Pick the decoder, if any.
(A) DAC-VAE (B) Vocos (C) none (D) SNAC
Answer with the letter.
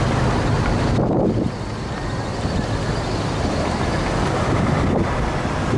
C